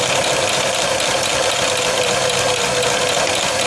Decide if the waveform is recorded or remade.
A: recorded